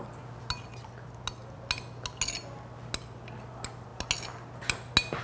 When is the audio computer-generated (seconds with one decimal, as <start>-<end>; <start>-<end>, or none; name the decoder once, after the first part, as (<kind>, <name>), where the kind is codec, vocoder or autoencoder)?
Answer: none